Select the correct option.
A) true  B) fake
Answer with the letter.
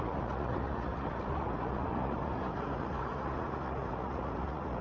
B